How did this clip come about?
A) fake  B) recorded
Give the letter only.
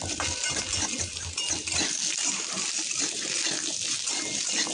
B